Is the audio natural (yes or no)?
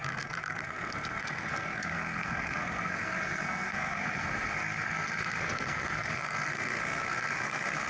no